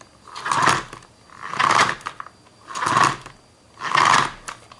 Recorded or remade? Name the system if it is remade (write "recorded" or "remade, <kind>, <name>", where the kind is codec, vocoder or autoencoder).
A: recorded